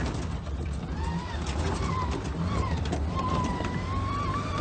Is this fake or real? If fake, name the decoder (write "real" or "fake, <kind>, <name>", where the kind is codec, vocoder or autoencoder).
fake, vocoder, BigVGAN v2